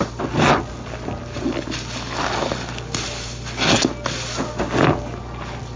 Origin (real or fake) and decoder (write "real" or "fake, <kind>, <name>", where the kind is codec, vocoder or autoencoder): real